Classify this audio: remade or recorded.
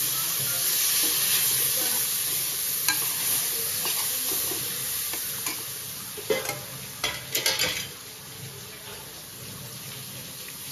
recorded